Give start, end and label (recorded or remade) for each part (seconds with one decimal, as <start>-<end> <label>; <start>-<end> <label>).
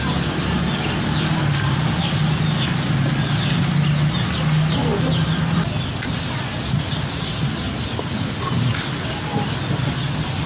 0.0-10.5 recorded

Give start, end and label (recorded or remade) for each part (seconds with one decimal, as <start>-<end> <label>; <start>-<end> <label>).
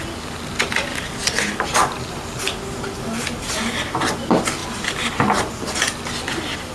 0.0-6.7 recorded